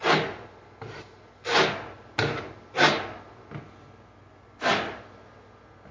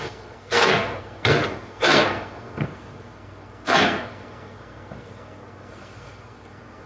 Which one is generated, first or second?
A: second